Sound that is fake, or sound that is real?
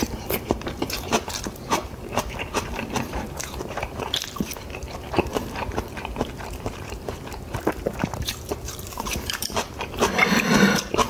fake